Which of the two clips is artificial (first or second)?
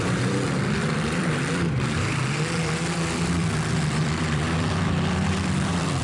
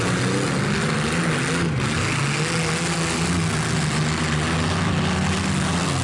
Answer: first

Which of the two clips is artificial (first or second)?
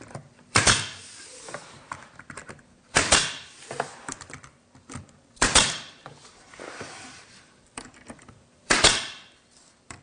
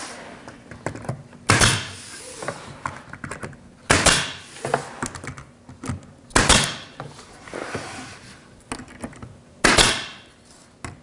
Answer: first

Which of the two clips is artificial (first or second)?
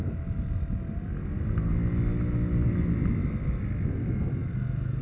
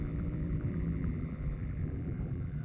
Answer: second